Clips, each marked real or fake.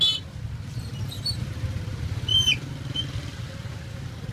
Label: real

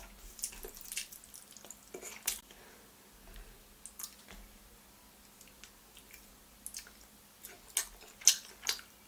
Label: real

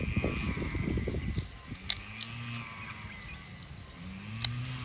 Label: real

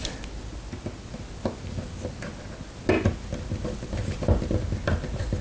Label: real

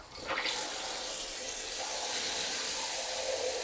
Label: fake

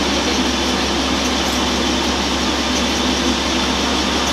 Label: real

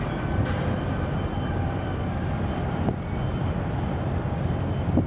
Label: real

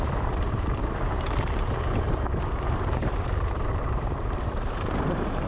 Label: fake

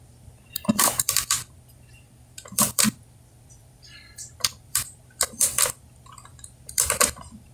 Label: fake